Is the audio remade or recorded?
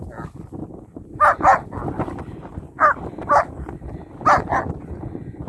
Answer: recorded